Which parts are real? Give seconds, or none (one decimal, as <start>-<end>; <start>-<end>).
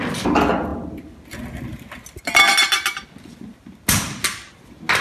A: 0.0-5.0